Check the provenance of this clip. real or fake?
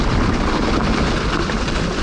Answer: real